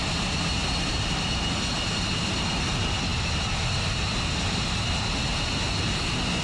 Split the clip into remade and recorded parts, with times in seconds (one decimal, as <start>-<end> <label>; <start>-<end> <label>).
0.0-6.4 recorded